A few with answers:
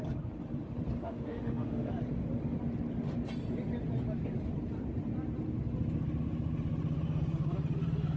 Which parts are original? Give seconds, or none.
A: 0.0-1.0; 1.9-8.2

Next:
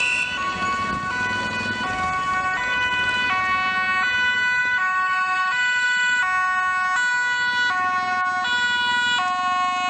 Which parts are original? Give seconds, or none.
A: 0.0-4.6; 6.2-9.9

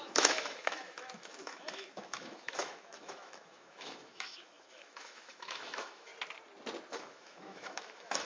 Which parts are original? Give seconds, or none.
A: 6.1-6.9